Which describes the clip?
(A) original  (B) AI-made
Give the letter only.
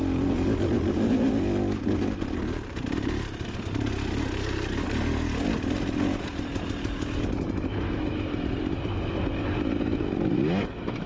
A